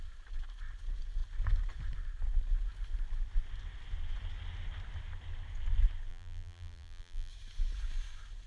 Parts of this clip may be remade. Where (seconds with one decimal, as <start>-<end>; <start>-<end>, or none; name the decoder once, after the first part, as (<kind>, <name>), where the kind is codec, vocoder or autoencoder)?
6.1-7.3 (vocoder, BigVGAN v2)